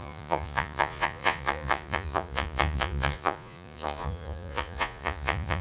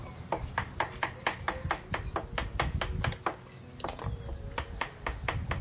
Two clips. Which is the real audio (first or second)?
second